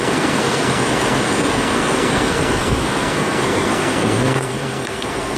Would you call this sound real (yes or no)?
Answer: no